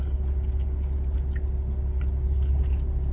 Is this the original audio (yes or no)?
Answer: yes